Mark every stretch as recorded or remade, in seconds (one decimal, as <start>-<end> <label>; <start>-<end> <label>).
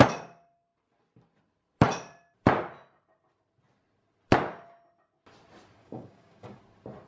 0.0-5.8 recorded; 5.8-6.6 remade; 6.6-7.1 recorded